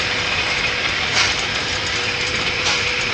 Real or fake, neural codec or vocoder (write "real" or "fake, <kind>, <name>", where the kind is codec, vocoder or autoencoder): fake, vocoder, BigVGAN v2